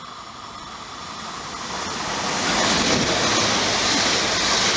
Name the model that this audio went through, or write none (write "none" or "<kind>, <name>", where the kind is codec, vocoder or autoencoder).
none